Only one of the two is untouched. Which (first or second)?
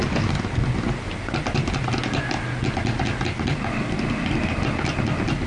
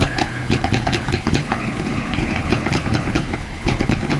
first